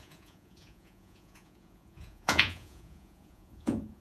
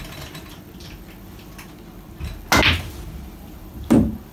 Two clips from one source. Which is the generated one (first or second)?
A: first